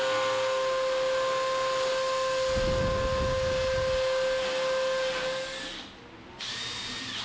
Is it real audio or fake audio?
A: real